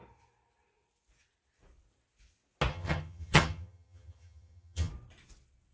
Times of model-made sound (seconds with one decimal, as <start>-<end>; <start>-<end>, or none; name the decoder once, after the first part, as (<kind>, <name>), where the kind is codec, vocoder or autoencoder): 2.7-4.9 (vocoder, HiFi-GAN)